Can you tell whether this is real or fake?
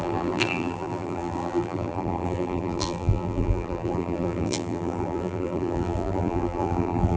fake